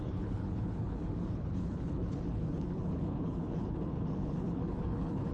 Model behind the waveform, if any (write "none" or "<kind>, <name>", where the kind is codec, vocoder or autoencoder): codec, HILCodec